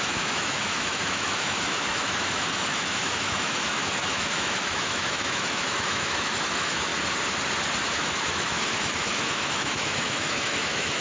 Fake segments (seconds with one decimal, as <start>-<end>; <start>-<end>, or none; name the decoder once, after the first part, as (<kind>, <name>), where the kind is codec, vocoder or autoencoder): 0.0-6.9 (autoencoder, DAC-VAE); 7.9-11.0